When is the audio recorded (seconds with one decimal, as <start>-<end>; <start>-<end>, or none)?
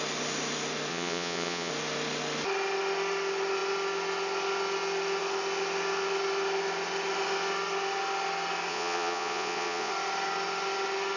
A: 0.0-0.9; 1.7-8.7; 9.9-11.2